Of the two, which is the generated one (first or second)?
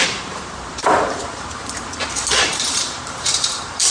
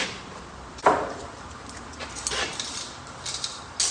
first